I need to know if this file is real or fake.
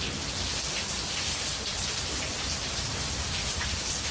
real